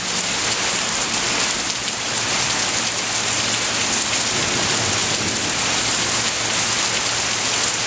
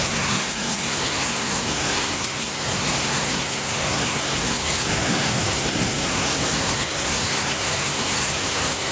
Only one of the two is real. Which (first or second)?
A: first